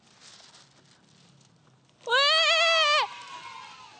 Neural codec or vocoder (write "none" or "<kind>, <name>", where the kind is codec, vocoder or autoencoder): none